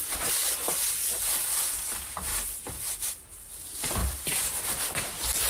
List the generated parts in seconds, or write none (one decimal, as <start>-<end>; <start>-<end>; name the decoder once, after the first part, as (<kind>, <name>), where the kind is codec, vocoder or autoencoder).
0.0-2.3 (vocoder, BigVGAN v2); 3.0-5.5